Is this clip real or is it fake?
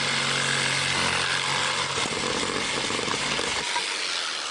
real